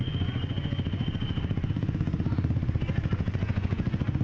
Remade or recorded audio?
remade